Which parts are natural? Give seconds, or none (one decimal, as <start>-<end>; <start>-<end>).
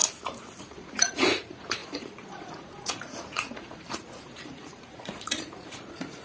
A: 0.0-0.6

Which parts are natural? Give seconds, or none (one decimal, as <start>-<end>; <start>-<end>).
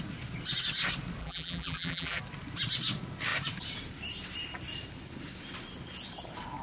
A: 0.0-1.2; 2.2-6.6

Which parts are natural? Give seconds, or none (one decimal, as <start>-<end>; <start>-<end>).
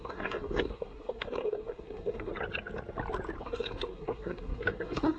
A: 2.3-3.4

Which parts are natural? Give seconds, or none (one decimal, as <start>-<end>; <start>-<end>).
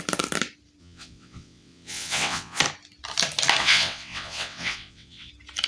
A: 0.0-0.8; 2.6-3.6; 5.3-5.7